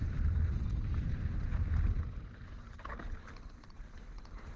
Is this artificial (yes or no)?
no